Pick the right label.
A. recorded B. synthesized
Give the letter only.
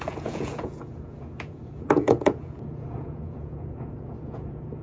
B